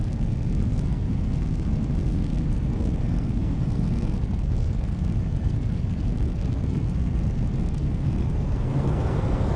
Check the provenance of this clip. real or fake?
fake